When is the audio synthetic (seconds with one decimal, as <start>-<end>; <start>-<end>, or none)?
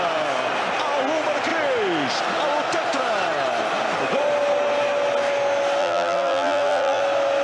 5.8-7.0